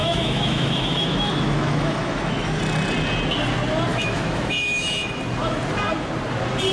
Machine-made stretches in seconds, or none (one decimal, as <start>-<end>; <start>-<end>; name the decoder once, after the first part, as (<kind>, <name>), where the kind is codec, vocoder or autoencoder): 0.0-2.6 (autoencoder, DAC-VAE); 3.9-5.2